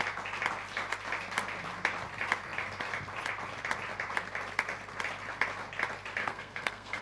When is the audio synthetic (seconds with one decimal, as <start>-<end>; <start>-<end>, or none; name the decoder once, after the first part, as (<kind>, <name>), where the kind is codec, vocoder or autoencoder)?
6.2-7.0 (codec, SNAC)